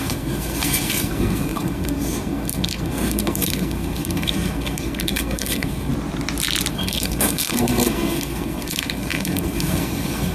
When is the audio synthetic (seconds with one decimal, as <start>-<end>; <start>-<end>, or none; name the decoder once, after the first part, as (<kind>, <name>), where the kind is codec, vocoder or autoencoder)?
0.0-5.9 (codec, SNAC); 6.7-10.3